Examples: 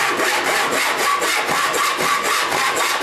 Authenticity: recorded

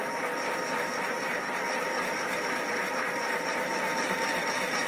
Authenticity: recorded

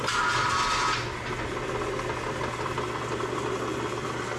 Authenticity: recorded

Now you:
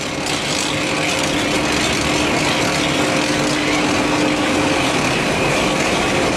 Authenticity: recorded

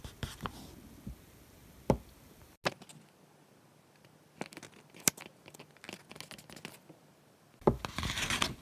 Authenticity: recorded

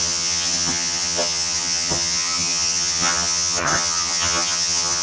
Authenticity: remade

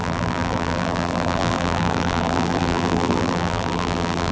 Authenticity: remade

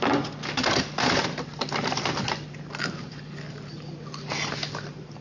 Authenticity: remade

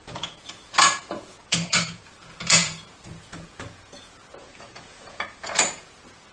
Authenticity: remade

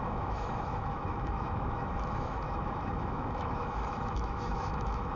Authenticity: remade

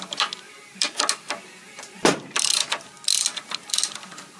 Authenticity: recorded